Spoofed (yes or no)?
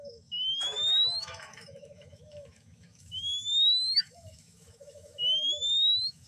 yes